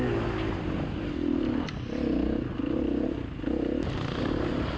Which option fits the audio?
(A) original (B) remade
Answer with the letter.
A